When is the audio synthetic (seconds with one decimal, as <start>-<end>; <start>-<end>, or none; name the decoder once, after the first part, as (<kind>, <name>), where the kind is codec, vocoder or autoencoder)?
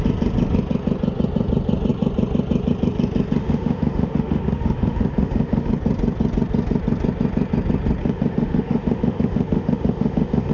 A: 3.4-5.7 (autoencoder, DAC-VAE); 8.0-10.5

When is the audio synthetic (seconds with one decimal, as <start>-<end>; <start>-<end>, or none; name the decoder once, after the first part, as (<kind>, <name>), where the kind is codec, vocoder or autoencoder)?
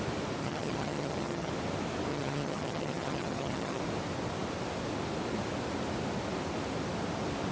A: 0.4-1.5 (vocoder, HiFi-GAN); 2.1-3.8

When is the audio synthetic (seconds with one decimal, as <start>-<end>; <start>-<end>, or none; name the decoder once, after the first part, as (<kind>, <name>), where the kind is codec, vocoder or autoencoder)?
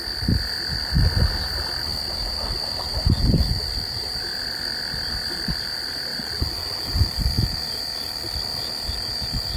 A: 6.1-7.3 (vocoder, BigVGAN v2)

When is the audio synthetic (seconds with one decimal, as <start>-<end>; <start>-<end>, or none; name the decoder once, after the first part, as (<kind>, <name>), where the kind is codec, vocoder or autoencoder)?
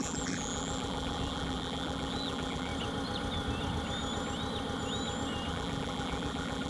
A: 0.0-2.7 (vocoder, BigVGAN v2); 5.5-6.7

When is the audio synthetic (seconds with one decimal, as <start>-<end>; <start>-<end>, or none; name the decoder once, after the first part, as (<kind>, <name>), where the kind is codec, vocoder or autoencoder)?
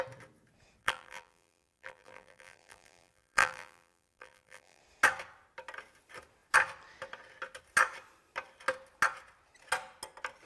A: 0.8-4.8 (vocoder, BigVGAN v2)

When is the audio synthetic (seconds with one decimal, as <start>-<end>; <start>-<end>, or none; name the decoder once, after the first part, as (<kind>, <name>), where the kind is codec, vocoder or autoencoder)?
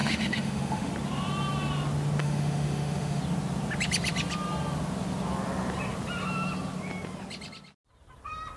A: 0.0-0.9 (autoencoder, DAC-VAE); 2.2-3.2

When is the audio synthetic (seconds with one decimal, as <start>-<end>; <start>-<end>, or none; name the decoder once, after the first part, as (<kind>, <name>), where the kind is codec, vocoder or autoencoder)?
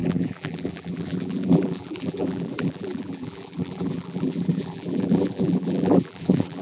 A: 0.0-6.6 (vocoder, BigVGAN v2)